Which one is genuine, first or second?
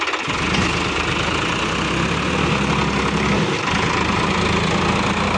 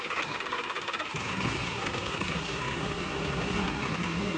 first